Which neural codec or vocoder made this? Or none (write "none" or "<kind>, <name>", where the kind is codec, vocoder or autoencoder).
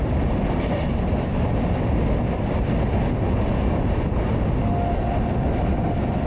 none